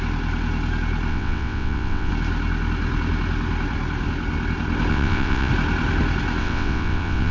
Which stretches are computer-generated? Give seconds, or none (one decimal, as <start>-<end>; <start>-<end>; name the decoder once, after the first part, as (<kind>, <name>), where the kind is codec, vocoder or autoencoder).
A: 1.1-2.1 (vocoder, WaveNeXt); 4.9-5.5; 6.4-7.3